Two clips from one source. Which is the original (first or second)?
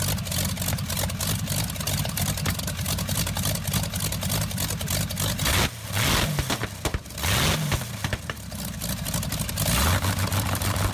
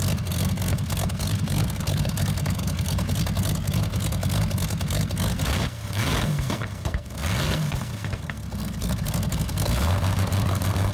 first